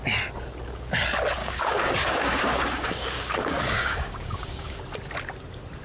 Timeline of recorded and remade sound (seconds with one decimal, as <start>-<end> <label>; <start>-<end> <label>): 0.0-1.4 recorded; 1.4-4.8 remade; 4.8-5.8 recorded

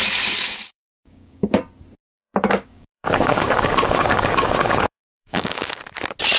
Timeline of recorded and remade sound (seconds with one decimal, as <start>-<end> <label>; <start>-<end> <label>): 0.0-0.7 recorded; 0.7-1.6 remade; 1.6-2.0 recorded; 2.0-5.8 remade; 5.8-6.4 recorded